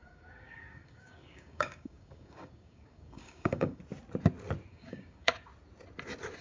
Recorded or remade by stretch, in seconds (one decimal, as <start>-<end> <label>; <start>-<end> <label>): 0.0-3.8 remade; 3.8-4.7 recorded; 4.7-5.3 remade; 5.3-6.4 recorded